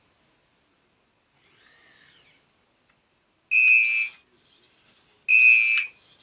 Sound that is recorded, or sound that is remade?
recorded